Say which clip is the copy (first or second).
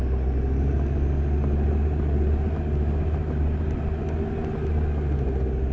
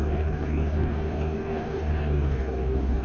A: second